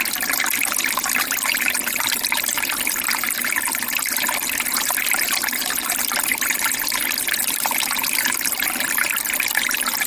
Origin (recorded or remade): recorded